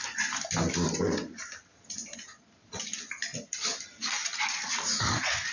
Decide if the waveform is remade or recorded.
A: recorded